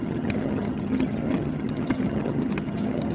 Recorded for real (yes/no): no